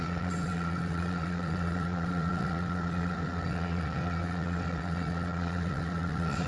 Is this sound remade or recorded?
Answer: remade